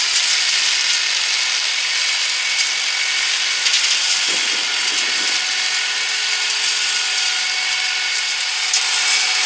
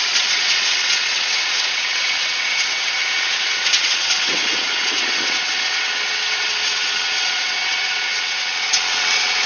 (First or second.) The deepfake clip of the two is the second